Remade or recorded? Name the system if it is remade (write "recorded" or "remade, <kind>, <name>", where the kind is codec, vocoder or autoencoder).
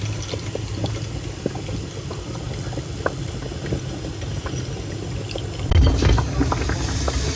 recorded